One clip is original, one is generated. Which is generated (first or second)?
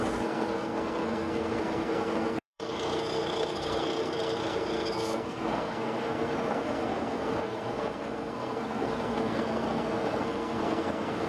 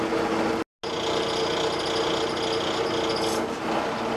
first